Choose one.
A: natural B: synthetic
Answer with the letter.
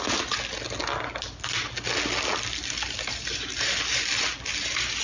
A